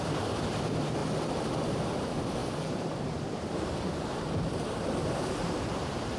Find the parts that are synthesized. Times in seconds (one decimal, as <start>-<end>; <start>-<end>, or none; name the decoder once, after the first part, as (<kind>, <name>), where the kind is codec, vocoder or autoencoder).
0.0-1.0 (vocoder, BigVGAN v2); 1.7-6.2